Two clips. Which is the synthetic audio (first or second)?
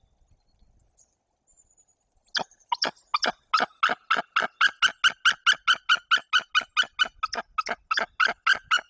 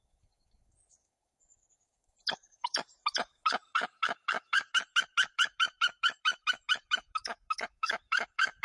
second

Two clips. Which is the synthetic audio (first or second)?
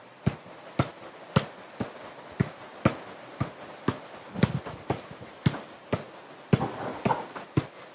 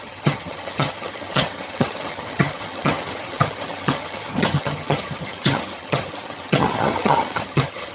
second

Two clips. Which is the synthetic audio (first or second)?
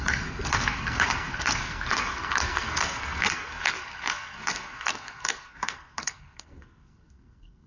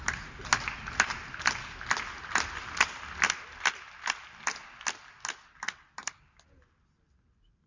first